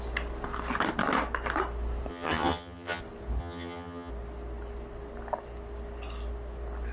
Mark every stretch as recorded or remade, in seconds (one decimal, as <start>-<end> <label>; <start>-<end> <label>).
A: 0.0-2.1 recorded; 2.1-3.0 remade; 3.0-3.4 recorded; 3.4-4.1 remade; 4.1-6.9 recorded